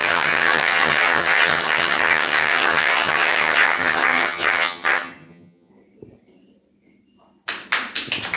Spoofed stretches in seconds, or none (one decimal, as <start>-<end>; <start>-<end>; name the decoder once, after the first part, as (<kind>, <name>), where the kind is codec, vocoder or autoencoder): 0.0-5.7 (vocoder, HiFi-GAN)